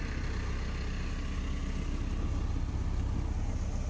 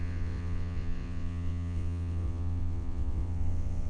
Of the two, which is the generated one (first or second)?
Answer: second